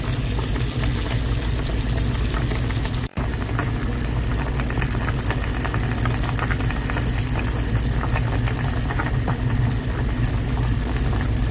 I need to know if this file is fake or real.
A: real